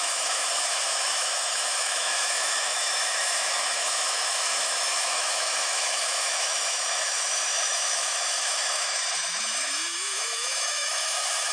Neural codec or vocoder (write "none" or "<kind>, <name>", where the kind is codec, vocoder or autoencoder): autoencoder, DAC-VAE